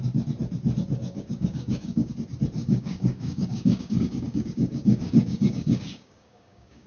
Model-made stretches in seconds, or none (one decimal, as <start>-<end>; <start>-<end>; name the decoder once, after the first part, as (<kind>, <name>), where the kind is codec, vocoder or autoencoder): 1.0-2.1 (codec, DAC); 2.6-6.9